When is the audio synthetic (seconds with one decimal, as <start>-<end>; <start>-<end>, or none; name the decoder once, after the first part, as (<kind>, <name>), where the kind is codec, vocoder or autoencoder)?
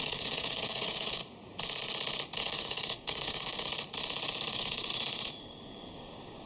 0.0-1.2 (codec, DAC); 2.4-3.7; 4.5-4.9; 5.4-6.5